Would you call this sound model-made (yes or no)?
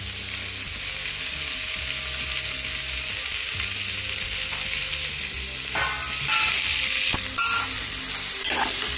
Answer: no